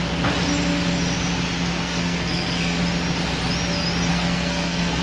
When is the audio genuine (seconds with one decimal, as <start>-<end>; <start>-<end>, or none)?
0.0-1.8; 2.8-4.1